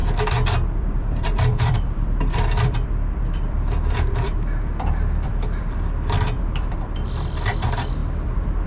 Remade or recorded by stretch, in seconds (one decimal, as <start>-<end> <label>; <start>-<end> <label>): 0.0-0.8 recorded; 0.8-8.0 remade; 8.0-8.7 recorded